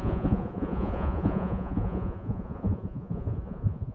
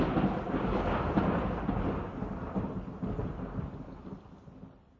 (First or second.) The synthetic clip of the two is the first